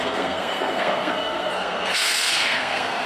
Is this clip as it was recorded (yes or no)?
no